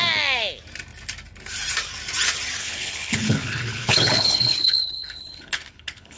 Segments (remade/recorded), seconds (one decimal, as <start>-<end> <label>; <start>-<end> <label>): 0.0-2.6 recorded; 2.6-6.2 remade

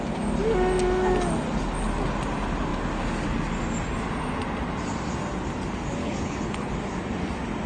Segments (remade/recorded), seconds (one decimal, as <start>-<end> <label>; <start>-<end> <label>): 0.0-6.0 recorded; 6.0-6.7 remade; 6.7-7.7 recorded

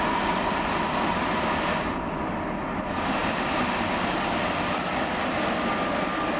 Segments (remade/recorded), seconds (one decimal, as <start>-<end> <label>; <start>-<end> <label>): 0.0-6.4 recorded

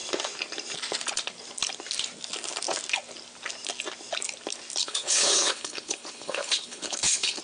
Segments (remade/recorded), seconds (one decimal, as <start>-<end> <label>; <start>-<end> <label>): 0.0-4.8 recorded; 4.8-7.4 remade

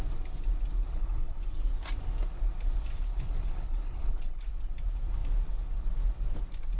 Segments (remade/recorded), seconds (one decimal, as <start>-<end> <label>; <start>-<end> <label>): 0.0-0.8 recorded; 0.8-1.4 remade; 1.4-2.9 recorded; 2.9-4.5 remade; 4.5-6.8 recorded

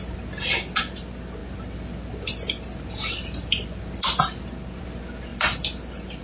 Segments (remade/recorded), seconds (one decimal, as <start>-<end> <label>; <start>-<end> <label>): 0.0-6.2 recorded

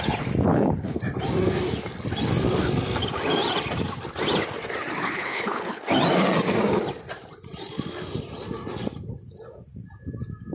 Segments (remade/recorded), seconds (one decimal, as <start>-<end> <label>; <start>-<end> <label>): 0.0-0.5 recorded; 0.5-1.0 remade; 1.0-5.0 recorded; 5.0-5.8 remade; 5.8-10.5 recorded

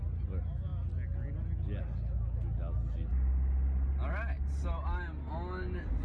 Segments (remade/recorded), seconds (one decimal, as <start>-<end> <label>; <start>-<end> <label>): 0.0-6.0 recorded